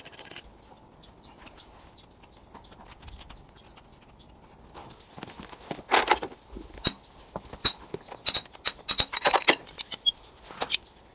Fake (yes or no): no